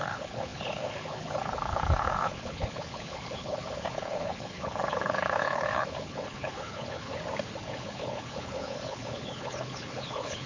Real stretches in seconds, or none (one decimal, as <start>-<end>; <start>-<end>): 7.1-7.6